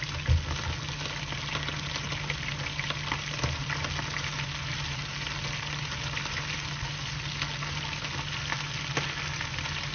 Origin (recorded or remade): recorded